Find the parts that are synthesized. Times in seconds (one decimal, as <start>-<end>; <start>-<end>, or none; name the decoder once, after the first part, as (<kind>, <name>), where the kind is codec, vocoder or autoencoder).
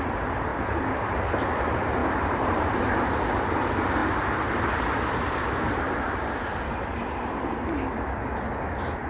0.5-1.5 (vocoder, BigVGAN v2); 2.0-3.2; 4.0-6.0